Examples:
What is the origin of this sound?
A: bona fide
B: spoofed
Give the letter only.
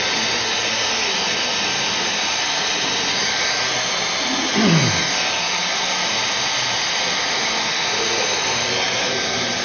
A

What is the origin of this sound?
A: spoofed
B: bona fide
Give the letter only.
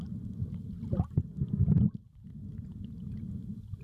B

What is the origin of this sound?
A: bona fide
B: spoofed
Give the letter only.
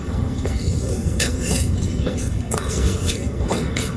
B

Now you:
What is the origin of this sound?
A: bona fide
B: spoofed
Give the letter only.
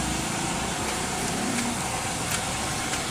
A